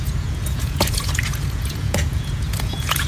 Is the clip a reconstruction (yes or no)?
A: yes